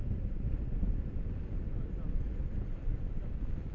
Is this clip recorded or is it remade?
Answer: recorded